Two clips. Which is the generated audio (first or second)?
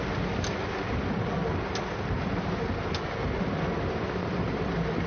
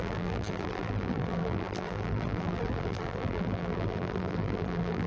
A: second